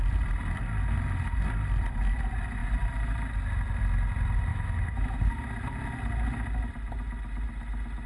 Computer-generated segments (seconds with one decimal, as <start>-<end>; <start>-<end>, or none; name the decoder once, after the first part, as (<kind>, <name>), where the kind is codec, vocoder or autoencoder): 4.5-5.2 (autoencoder, DAC-VAE)

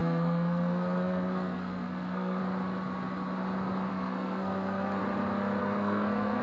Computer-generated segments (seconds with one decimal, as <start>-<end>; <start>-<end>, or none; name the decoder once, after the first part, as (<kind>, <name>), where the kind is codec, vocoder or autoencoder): 0.0-2.4 (codec, SNAC); 3.9-5.0; 5.6-6.4